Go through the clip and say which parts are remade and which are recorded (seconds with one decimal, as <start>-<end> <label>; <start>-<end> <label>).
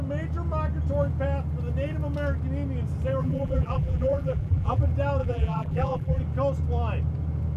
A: 0.0-3.2 recorded; 3.2-4.8 remade; 4.8-5.2 recorded; 5.2-6.2 remade; 6.2-7.6 recorded